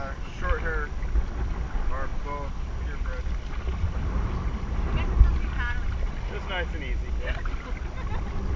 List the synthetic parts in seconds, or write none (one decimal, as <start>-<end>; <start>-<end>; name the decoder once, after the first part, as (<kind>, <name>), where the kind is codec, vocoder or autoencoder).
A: none